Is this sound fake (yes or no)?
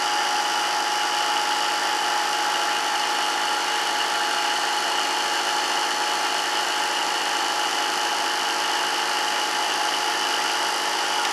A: no